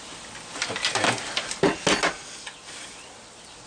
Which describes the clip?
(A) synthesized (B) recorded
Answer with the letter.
B